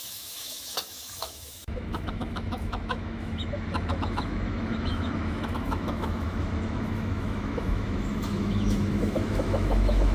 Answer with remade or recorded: remade